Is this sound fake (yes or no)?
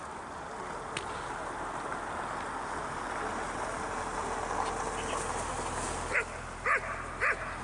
no